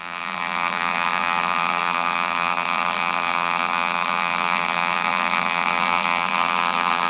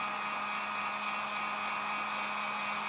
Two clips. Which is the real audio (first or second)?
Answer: second